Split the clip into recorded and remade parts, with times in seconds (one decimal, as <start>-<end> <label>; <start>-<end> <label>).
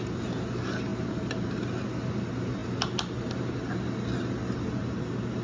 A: 0.0-5.4 recorded